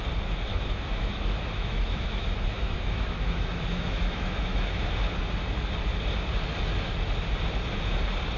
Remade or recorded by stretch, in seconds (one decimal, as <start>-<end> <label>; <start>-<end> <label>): 0.0-0.5 recorded; 0.5-4.9 remade; 4.9-8.4 recorded